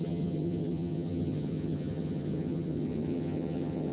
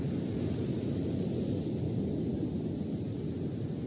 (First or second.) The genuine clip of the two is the second